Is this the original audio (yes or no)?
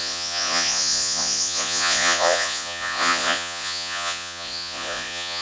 no